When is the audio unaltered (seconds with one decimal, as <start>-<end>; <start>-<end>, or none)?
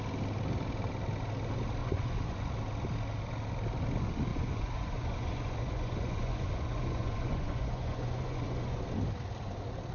0.0-1.8; 2.5-4.3; 8.8-9.9